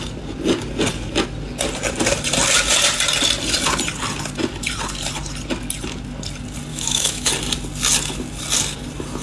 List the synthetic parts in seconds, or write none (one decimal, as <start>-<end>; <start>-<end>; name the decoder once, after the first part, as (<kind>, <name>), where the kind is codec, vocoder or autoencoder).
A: 6.7-7.3 (autoencoder, DAC-VAE)